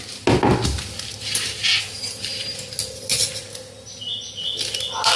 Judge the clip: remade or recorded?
recorded